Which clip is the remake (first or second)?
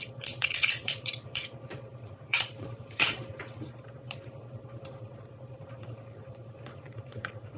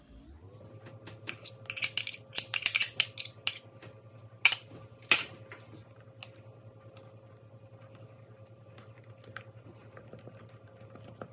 first